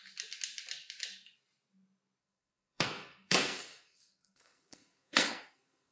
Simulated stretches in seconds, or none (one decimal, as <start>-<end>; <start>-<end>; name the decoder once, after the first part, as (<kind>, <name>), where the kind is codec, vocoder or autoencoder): 2.2-5.9 (codec, SNAC)